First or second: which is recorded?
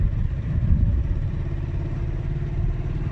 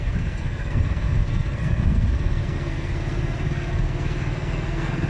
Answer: first